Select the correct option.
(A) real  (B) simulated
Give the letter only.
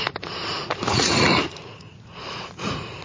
B